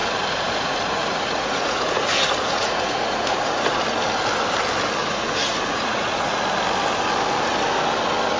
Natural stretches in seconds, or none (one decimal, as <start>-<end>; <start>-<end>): 3.8-5.0; 6.4-8.4

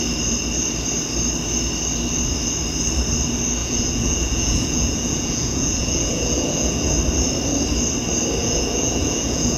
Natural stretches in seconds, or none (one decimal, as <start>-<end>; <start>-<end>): 0.0-3.6; 6.9-8.4

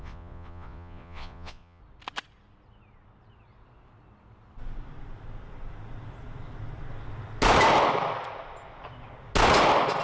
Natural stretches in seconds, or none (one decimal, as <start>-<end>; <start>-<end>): 1.8-10.0

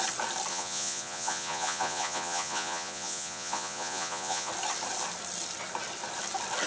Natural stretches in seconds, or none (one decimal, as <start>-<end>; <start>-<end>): 0.0-0.5; 4.5-6.7

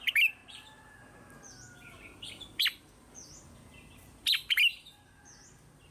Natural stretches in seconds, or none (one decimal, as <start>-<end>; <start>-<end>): 0.0-5.9

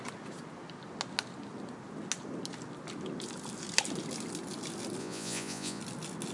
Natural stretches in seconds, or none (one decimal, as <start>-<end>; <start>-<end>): 0.0-5.0; 5.8-6.3

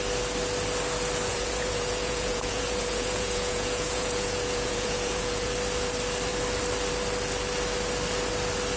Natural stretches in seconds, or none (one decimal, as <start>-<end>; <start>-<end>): 0.0-1.3; 5.5-8.8